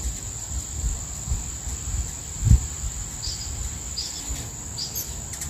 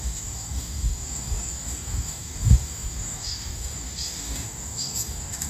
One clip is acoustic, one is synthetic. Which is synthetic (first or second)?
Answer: second